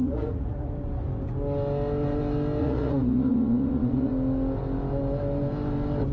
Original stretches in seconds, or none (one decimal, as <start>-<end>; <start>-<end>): 0.7-2.6; 4.1-6.1